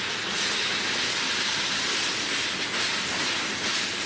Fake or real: real